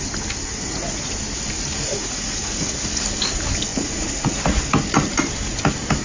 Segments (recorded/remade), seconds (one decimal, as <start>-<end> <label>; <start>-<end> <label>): 0.0-0.5 recorded; 0.5-1.1 remade; 1.1-1.9 recorded; 1.9-2.7 remade; 2.7-3.7 recorded; 3.7-4.4 remade; 4.4-6.0 recorded